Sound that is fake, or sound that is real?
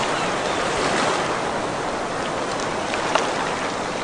real